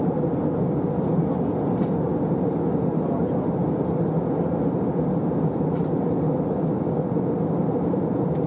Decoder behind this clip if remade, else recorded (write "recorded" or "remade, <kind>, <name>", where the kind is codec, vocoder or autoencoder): recorded